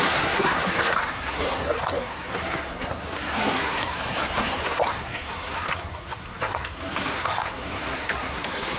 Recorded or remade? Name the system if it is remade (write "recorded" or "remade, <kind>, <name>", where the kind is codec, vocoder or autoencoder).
remade, codec, SNAC